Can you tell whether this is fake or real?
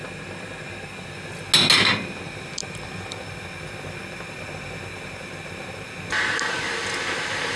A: real